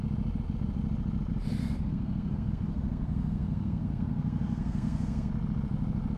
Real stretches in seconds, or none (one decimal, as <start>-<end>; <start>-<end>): 0.0-1.6; 5.3-6.2